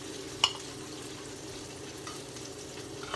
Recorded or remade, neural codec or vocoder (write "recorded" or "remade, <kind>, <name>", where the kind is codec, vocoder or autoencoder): recorded